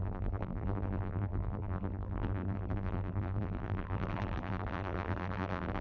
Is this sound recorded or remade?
remade